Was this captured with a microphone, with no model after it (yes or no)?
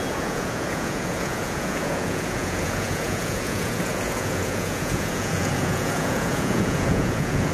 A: no